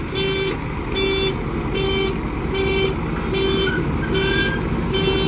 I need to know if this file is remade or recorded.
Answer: recorded